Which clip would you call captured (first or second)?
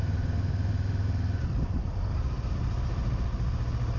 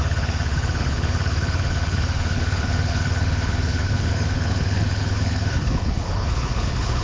first